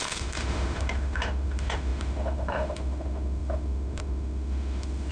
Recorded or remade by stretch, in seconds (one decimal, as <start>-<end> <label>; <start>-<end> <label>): 0.0-5.1 remade